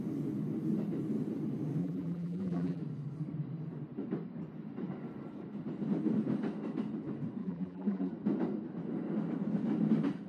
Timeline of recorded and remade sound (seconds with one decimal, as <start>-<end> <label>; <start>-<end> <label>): 0.0-1.8 recorded; 1.8-2.8 remade; 2.8-7.4 recorded; 7.4-8.1 remade; 8.1-10.3 recorded